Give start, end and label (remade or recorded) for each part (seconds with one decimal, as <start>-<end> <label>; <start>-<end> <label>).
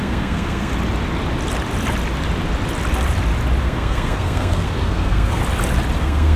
0.0-0.7 remade; 0.7-3.6 recorded; 3.6-5.4 remade; 5.4-6.0 recorded; 6.0-6.4 remade